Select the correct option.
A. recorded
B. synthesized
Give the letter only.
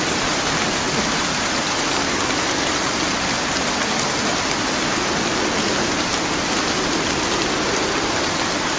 A